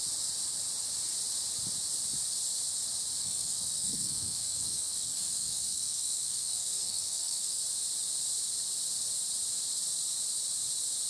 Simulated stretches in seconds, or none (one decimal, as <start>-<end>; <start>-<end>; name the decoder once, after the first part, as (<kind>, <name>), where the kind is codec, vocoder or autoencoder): 3.2-7.6 (codec, SNAC)